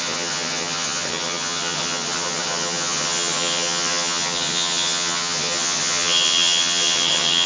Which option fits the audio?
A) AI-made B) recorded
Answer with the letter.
A